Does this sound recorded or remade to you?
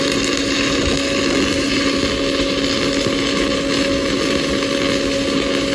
recorded